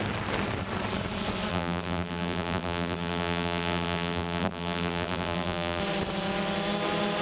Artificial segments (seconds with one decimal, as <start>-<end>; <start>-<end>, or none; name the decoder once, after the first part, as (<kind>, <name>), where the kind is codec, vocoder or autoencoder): 1.5-5.8 (vocoder, BigVGAN v2)